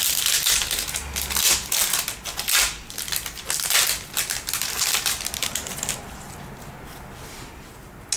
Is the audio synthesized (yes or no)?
no